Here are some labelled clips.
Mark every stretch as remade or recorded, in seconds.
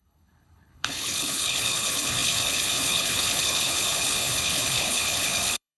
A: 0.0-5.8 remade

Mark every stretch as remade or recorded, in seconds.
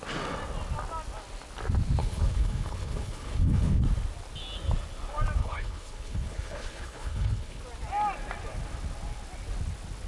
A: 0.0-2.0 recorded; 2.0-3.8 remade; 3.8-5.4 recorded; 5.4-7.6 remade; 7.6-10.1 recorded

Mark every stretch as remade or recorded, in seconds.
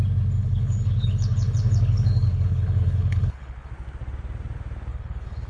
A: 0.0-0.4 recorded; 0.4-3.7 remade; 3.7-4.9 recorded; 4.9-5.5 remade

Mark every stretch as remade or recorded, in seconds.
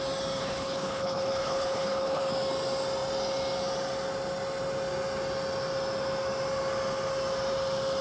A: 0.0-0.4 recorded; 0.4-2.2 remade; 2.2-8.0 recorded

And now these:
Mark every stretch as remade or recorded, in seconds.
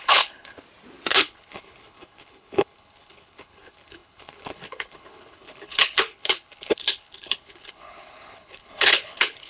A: 0.0-0.6 remade; 0.6-1.1 recorded; 1.1-9.5 remade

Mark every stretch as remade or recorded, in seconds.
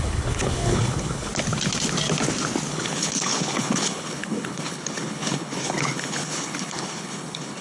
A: 0.0-1.3 remade; 1.3-2.7 recorded; 2.7-7.6 remade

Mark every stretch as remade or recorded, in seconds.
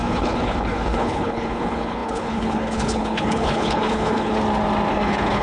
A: 0.0-4.3 remade; 4.3-4.9 recorded; 4.9-5.4 remade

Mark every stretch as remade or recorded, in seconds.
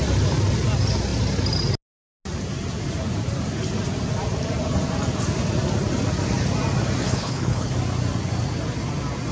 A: 0.0-7.0 recorded; 7.0-7.7 remade; 7.7-9.3 recorded